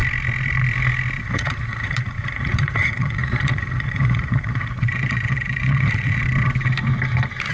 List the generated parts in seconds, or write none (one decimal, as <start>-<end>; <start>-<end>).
1.2-6.2